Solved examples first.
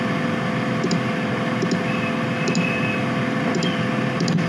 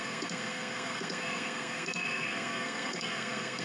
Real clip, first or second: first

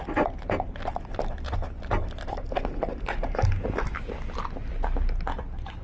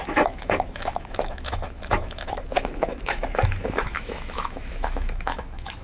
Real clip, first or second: first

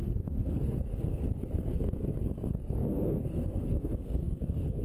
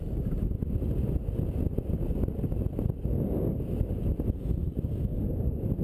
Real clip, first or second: second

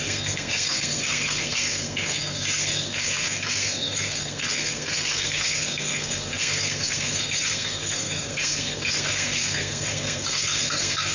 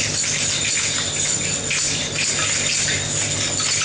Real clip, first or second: second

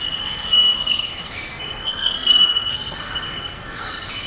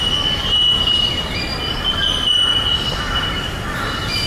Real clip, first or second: second